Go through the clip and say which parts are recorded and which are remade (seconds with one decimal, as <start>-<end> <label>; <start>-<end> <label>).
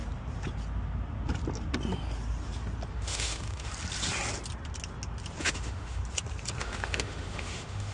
0.0-2.9 recorded; 2.9-3.7 remade; 3.7-5.4 recorded; 5.4-6.0 remade; 6.0-6.6 recorded; 6.6-7.9 remade